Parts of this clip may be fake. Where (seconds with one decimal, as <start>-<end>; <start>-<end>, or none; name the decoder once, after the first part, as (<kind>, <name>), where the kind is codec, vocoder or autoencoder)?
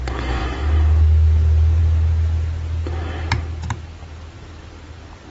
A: 2.8-5.3 (vocoder, BigVGAN v2)